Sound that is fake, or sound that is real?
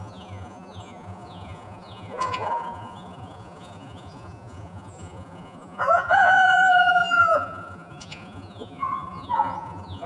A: fake